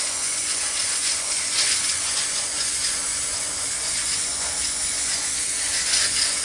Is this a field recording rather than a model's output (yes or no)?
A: no